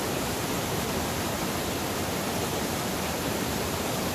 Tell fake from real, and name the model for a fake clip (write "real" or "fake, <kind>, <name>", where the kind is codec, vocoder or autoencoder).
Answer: fake, vocoder, BigVGAN v2